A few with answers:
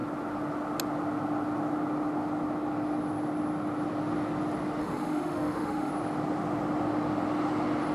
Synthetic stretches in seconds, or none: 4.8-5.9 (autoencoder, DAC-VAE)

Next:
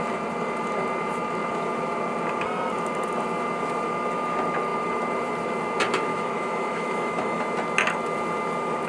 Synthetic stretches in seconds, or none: 6.1-7.4 (autoencoder, DAC-VAE)

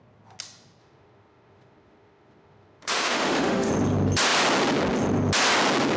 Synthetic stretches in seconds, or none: 0.8-3.7 (autoencoder, DAC-VAE)

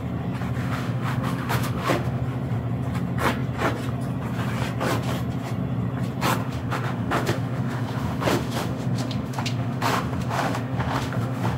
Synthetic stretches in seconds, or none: 0.6-2.2 (autoencoder, DAC-VAE); 6.4-11.6

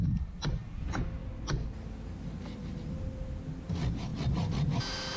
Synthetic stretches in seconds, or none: none

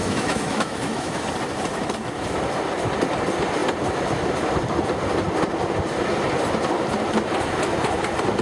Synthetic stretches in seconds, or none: 0.0-1.3 (autoencoder, DAC-VAE)

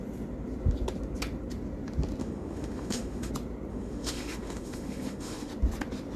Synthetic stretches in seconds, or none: 2.2-3.3 (autoencoder, DAC-VAE); 3.7-5.5